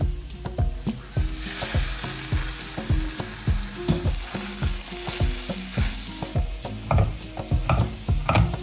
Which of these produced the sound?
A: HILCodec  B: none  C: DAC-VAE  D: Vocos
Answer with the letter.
B